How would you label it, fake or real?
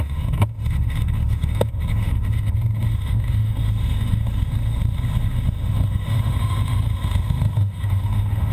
fake